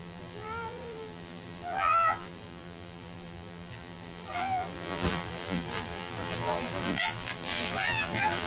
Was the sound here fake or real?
fake